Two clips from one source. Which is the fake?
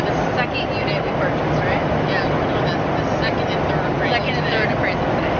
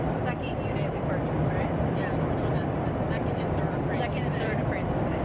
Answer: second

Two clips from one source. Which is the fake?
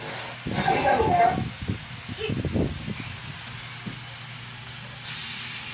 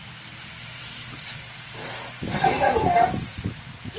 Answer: second